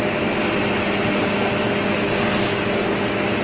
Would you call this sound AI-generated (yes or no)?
no